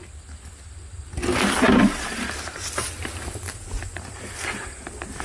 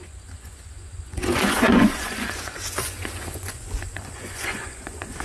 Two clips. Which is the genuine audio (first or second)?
first